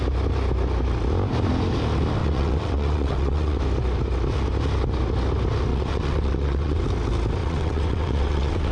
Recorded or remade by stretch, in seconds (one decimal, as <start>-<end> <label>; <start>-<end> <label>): 0.0-2.2 recorded; 2.2-3.6 remade; 3.6-5.7 recorded; 5.7-6.8 remade; 6.8-7.4 recorded; 7.4-8.7 remade